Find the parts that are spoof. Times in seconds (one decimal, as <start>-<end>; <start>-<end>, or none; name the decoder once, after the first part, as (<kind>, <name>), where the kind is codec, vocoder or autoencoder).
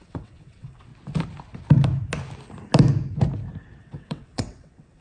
0.0-0.9 (vocoder, WaveNeXt); 3.8-5.0